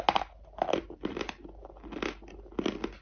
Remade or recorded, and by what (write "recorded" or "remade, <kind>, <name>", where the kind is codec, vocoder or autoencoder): recorded